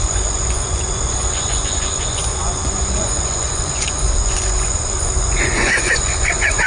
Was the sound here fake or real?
fake